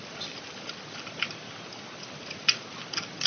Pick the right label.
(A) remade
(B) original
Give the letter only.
B